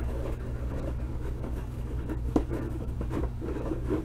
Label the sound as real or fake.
fake